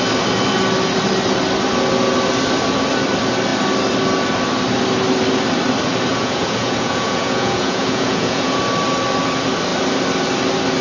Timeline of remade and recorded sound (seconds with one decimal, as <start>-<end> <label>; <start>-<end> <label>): 0.0-6.1 recorded; 6.1-8.6 remade; 8.6-10.8 recorded

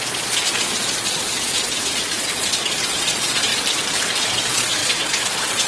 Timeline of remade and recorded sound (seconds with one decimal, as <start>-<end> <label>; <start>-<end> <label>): 0.0-3.5 remade; 3.5-4.2 recorded; 4.2-5.7 remade

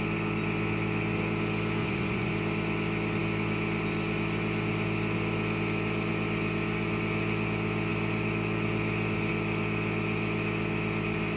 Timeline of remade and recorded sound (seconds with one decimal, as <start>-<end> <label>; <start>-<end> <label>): 0.0-1.8 recorded; 1.8-2.3 remade; 2.3-11.4 recorded

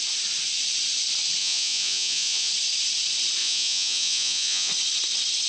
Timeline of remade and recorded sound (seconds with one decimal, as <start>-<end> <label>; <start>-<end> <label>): 0.0-1.4 recorded; 1.4-2.5 remade; 2.5-3.4 recorded; 3.4-4.7 remade; 4.7-5.5 recorded